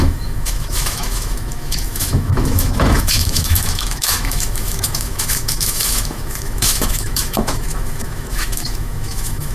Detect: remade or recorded remade